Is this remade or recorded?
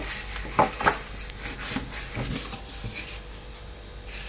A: recorded